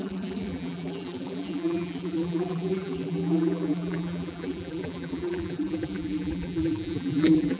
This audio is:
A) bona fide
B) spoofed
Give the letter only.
B